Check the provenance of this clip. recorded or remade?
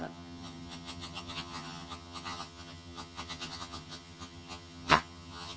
remade